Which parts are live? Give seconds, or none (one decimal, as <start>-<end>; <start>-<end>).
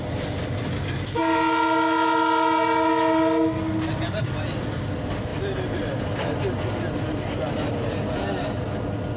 0.0-9.2